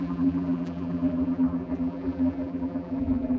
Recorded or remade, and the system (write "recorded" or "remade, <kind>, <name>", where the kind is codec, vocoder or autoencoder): remade, vocoder, BigVGAN v2